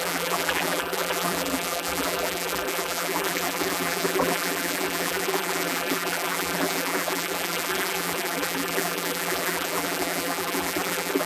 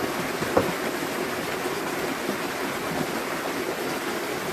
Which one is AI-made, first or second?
first